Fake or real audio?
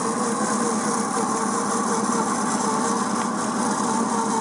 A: real